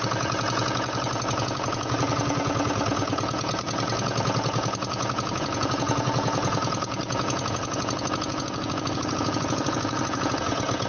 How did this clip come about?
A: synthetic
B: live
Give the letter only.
A